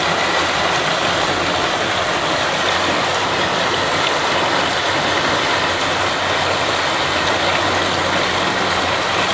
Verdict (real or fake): real